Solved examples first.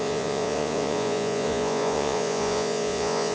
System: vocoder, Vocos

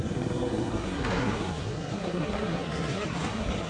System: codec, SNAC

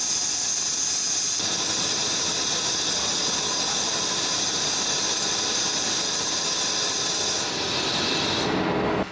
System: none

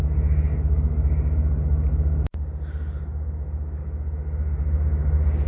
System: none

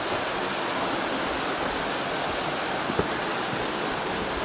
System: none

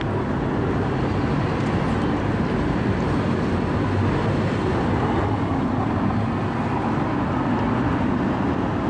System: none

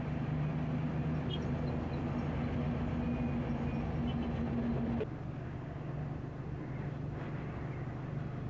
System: none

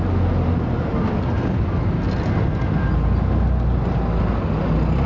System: none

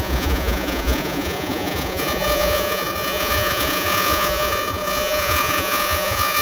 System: vocoder, Vocos